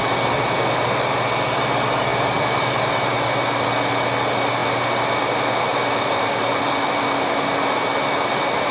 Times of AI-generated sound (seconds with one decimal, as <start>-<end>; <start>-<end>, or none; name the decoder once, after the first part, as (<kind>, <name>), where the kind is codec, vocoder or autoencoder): 2.1-2.7 (vocoder, BigVGAN v2); 5.7-7.3